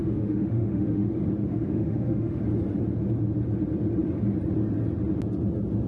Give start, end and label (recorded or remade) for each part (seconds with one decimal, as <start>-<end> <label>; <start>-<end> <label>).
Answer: 0.0-1.1 remade; 1.1-1.5 recorded; 1.5-2.4 remade; 2.4-5.9 recorded